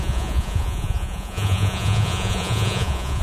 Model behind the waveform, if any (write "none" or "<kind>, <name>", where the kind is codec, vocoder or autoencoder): vocoder, Vocos